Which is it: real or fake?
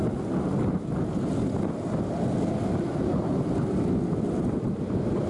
real